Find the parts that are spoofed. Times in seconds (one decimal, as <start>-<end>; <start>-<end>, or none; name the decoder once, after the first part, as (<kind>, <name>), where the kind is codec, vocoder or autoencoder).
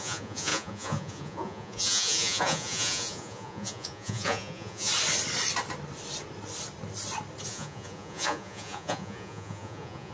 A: 0.0-4.9 (vocoder, Vocos); 7.5-10.1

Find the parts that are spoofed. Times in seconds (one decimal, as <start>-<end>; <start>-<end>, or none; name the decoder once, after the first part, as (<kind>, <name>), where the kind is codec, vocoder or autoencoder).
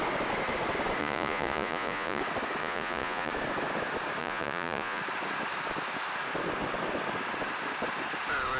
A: 1.0-2.2 (vocoder, Vocos); 2.6-3.3; 4.2-5.0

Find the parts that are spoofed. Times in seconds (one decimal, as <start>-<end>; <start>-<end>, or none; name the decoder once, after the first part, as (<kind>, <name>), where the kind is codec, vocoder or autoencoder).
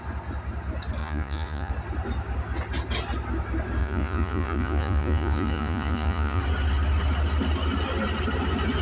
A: 1.0-1.7 (vocoder, Vocos); 3.8-6.4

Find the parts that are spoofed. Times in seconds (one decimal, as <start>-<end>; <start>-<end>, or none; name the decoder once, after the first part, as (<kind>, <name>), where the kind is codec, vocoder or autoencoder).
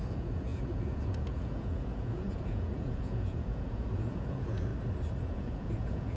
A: 0.0-4.7 (vocoder, Vocos); 5.2-6.2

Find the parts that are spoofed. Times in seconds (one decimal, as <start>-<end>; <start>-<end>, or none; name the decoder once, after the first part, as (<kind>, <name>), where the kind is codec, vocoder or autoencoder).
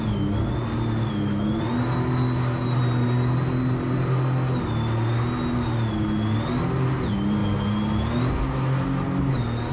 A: none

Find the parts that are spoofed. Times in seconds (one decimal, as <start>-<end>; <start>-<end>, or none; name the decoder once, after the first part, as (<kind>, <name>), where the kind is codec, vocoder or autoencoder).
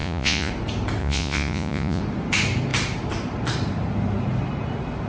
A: 0.0-0.5 (vocoder, Vocos); 1.0-2.0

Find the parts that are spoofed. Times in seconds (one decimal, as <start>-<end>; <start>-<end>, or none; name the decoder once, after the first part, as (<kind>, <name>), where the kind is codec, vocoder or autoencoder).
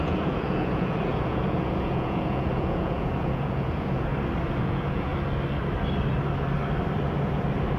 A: 0.0-4.1 (vocoder, Vocos); 4.6-5.1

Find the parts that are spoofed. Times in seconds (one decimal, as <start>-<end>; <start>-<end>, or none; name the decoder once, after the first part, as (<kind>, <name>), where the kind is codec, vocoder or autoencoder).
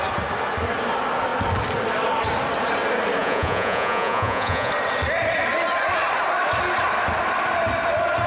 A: 3.2-4.7 (vocoder, Vocos)